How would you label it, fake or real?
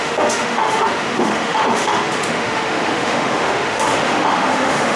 fake